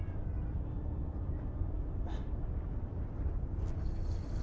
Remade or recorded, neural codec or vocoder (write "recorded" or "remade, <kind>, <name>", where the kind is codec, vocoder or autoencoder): recorded